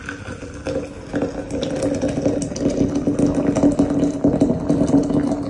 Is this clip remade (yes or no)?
no